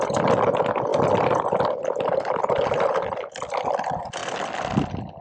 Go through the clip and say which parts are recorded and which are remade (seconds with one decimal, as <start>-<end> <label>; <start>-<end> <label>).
0.0-4.2 remade; 4.2-5.2 recorded